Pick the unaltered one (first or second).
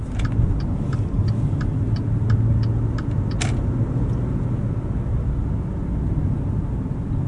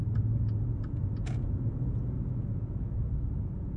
first